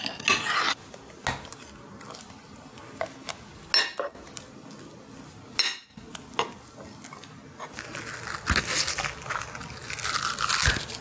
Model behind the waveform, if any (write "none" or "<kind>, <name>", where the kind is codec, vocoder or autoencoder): none